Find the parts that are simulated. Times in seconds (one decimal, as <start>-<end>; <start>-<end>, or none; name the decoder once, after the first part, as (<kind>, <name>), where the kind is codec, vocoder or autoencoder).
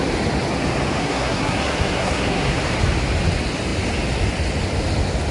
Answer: 1.0-2.6 (codec, SNAC)